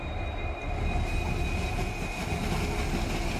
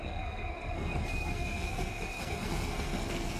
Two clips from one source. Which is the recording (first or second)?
first